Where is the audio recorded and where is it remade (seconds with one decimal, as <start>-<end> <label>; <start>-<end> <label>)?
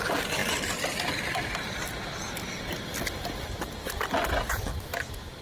0.0-5.4 recorded